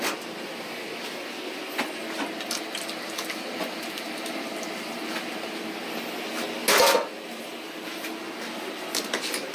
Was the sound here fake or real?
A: real